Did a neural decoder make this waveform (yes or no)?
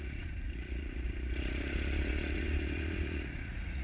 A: yes